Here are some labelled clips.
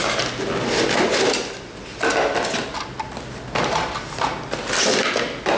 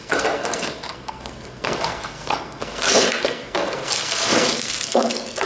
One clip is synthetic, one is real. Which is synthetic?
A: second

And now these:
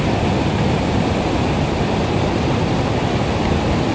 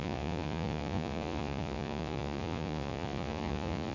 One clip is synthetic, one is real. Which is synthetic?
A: second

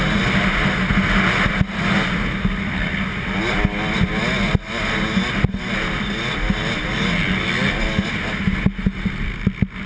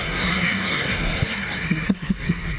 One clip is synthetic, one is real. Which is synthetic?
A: second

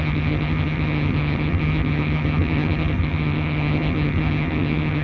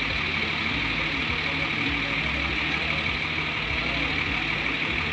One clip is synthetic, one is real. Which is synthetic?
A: first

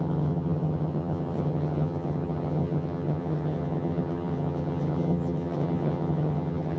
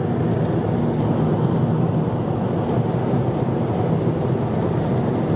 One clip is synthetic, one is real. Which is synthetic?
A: first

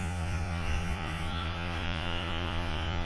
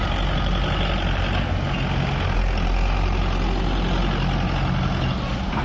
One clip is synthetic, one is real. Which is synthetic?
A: first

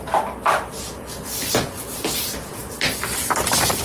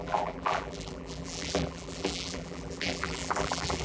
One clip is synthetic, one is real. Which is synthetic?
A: second